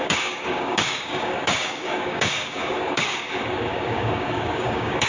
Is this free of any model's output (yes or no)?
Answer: no